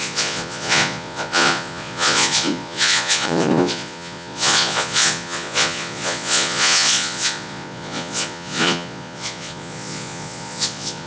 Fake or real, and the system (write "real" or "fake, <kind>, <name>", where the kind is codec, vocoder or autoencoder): fake, vocoder, Vocos